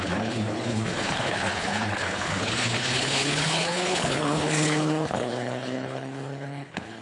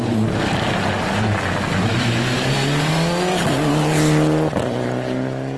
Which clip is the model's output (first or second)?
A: first